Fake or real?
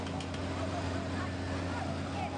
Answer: real